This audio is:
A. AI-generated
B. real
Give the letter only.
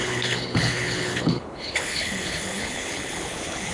A